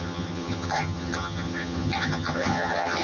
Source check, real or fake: fake